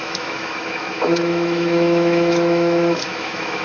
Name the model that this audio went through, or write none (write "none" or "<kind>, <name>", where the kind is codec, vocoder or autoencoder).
autoencoder, DAC-VAE